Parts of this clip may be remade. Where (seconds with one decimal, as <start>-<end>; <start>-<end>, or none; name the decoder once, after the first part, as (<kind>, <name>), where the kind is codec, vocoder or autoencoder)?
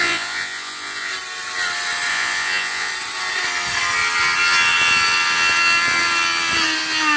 0.0-1.1 (vocoder, Vocos); 2.1-2.9